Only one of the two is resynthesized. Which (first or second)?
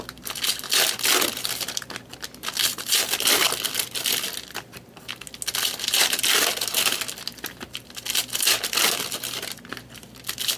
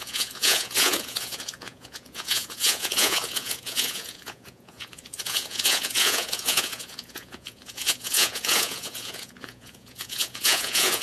second